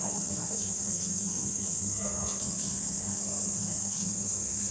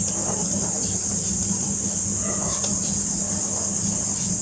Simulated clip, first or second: first